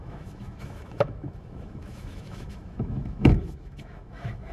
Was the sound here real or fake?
fake